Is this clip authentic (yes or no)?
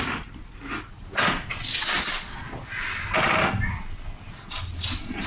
yes